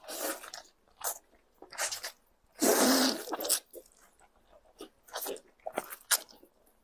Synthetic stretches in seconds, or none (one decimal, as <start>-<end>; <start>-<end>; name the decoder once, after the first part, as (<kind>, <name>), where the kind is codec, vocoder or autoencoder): none